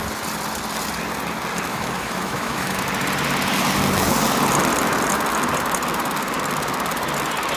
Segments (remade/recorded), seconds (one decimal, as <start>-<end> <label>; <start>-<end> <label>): 0.0-1.7 recorded; 1.7-2.8 remade; 2.8-7.6 recorded